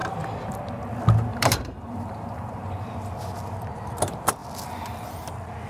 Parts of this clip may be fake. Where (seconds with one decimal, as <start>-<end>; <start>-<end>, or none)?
1.3-2.9